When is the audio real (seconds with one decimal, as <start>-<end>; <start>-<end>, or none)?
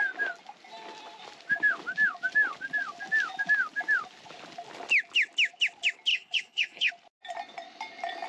0.0-6.1; 6.9-8.3